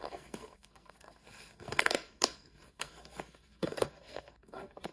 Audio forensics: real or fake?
fake